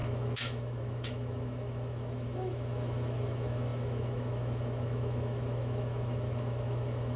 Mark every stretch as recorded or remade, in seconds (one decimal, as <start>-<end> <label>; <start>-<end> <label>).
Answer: 0.0-7.2 remade